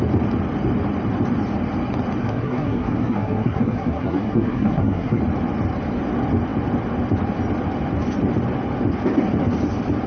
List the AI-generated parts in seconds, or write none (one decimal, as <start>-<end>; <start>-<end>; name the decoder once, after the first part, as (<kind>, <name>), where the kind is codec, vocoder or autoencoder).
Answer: 2.2-5.2 (codec, SNAC)